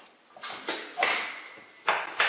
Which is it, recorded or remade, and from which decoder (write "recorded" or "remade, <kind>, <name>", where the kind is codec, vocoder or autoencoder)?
recorded